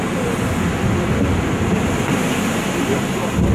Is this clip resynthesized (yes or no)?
no